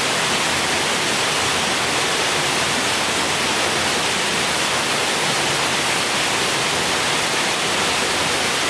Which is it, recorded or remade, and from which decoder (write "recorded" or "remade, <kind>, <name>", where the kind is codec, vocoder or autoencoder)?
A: recorded